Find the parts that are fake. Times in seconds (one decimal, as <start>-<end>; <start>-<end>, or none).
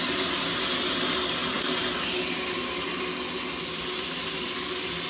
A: none